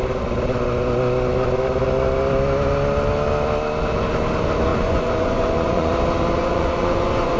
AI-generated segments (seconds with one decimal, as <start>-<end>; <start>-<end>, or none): 4.7-5.9; 6.4-7.4

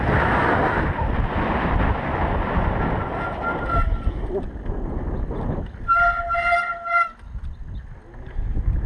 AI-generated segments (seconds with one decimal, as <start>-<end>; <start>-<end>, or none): none